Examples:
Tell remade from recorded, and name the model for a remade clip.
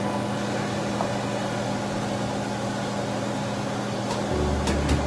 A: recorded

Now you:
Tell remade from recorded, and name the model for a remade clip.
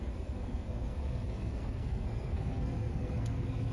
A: remade, codec, SNAC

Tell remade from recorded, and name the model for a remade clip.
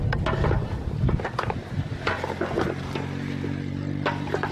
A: recorded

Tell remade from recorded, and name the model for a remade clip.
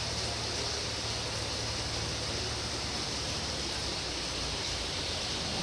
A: recorded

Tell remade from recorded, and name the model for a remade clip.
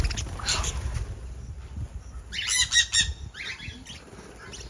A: recorded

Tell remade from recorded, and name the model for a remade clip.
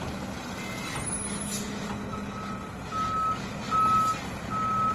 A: recorded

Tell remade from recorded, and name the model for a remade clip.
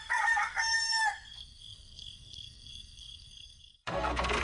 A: remade, codec, SNAC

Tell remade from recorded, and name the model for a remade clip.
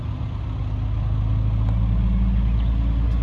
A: recorded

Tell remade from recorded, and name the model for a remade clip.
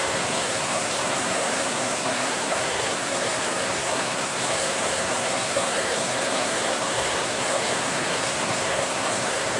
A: remade, codec, SNAC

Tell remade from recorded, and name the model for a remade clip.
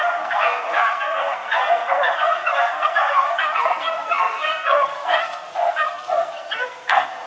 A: remade, codec, SNAC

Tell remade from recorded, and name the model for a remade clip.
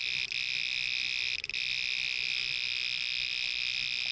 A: recorded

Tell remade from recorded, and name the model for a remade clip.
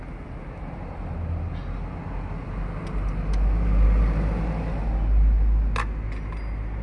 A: recorded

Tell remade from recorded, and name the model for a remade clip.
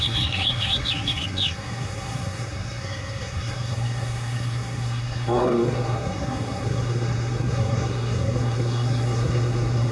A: remade, codec, SNAC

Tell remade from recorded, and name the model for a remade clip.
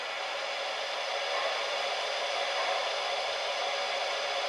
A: recorded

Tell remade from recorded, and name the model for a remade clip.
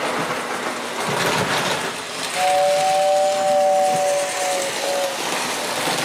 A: recorded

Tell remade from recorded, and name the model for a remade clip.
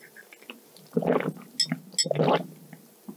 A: recorded